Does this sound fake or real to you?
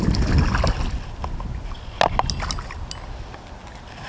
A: real